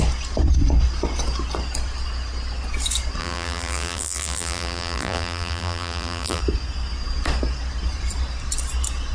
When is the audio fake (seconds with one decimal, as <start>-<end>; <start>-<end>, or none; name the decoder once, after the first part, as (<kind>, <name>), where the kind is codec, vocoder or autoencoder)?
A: 3.2-6.4 (vocoder, BigVGAN v2)